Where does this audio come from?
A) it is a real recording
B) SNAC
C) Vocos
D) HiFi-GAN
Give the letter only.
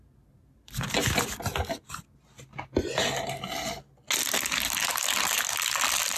A